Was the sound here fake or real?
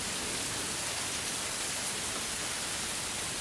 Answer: real